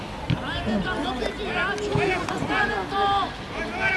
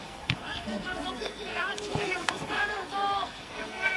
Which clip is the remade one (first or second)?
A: second